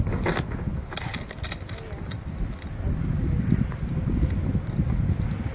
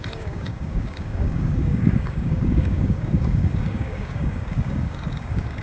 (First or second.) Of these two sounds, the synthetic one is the second